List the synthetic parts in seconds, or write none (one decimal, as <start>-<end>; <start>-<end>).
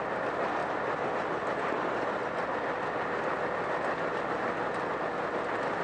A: none